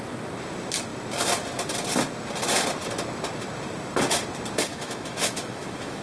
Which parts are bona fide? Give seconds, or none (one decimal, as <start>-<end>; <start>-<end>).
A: 0.0-4.7